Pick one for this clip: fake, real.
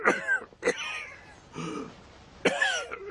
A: real